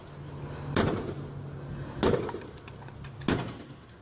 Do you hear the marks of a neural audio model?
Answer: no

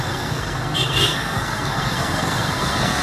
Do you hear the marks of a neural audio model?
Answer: yes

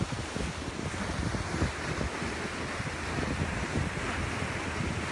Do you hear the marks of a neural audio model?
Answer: no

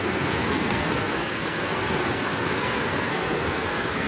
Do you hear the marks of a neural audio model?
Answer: yes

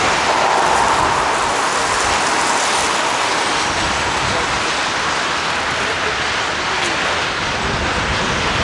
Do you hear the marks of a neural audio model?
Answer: no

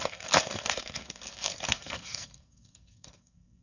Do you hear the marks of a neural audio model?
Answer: yes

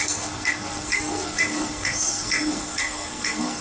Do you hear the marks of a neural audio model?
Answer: yes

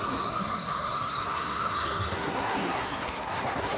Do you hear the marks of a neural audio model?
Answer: yes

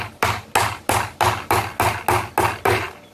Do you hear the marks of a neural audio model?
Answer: no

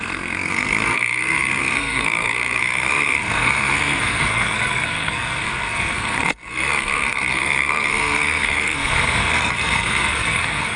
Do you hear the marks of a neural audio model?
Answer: yes